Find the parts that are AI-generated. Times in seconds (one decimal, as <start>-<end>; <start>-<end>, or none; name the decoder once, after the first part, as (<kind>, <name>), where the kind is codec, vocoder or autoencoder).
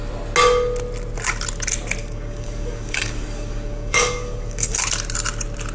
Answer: 2.0-4.8 (codec, DAC)